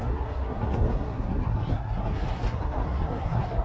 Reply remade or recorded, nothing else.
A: remade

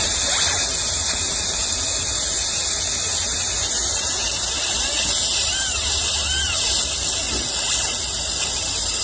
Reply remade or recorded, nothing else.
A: recorded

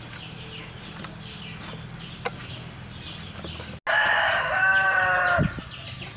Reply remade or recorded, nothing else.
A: recorded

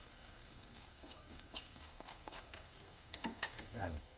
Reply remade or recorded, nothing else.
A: remade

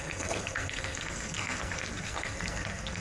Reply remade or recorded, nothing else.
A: remade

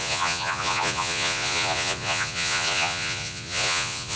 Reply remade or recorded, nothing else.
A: remade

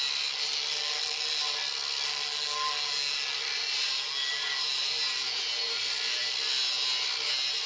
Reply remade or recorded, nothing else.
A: recorded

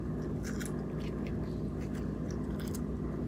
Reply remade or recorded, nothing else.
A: recorded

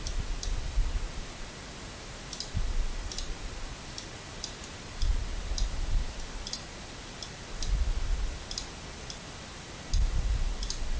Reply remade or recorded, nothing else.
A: recorded